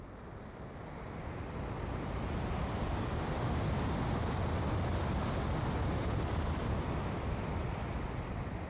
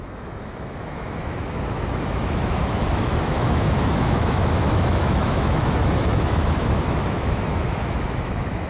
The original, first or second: first